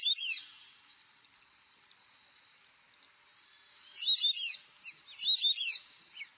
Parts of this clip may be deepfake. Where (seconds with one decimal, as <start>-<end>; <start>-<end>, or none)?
0.0-2.2